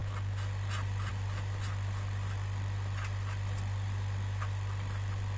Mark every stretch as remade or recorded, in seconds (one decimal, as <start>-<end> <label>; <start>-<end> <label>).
0.0-5.4 recorded